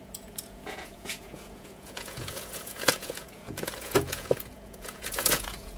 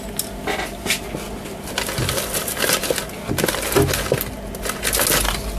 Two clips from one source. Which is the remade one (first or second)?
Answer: first